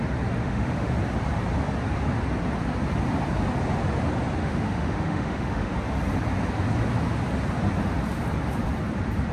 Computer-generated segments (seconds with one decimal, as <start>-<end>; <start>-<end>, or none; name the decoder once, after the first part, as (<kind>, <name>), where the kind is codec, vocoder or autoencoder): 0.4-0.9 (autoencoder, DAC-VAE); 4.4-5.7